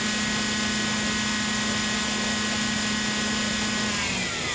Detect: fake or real real